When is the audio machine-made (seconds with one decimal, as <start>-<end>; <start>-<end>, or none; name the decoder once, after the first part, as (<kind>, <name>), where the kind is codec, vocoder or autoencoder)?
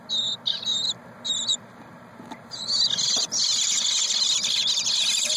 1.5-2.7 (vocoder, BigVGAN v2)